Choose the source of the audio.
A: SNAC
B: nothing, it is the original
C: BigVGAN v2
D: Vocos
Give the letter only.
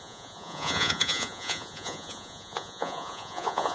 D